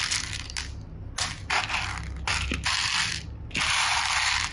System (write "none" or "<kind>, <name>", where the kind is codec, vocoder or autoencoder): none